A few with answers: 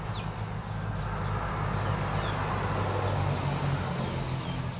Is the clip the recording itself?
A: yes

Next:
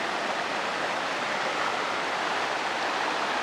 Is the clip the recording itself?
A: yes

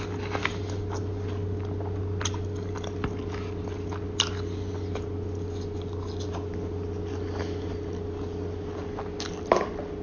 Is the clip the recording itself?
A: yes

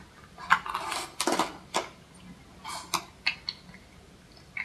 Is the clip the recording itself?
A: yes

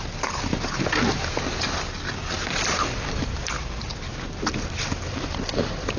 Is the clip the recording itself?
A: yes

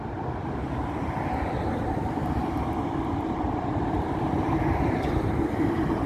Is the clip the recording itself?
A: no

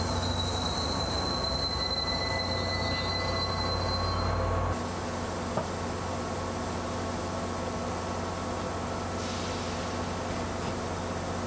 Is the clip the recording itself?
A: yes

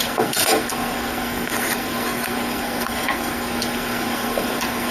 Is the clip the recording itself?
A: no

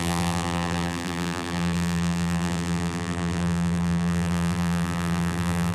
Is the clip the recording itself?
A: no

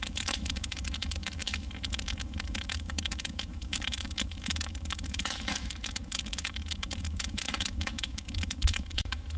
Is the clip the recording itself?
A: no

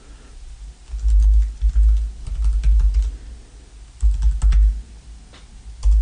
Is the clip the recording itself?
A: yes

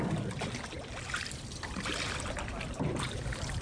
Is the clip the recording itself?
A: no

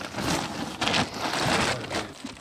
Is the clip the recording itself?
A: yes